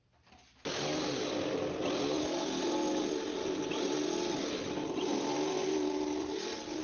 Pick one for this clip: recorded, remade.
remade